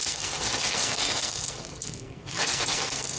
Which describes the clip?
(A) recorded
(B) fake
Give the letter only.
B